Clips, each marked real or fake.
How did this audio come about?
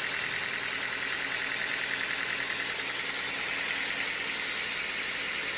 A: real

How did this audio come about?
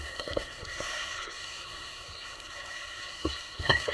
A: fake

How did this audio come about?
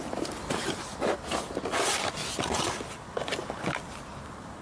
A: real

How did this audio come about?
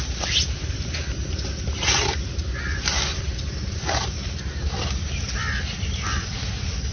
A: real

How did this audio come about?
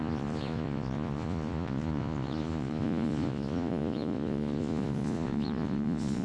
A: fake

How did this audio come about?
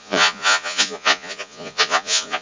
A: fake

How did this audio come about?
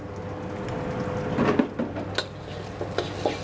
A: real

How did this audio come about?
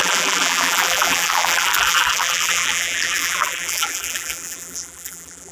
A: fake